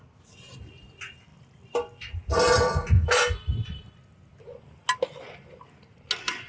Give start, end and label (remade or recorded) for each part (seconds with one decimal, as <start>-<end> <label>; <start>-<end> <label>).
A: 0.0-6.5 recorded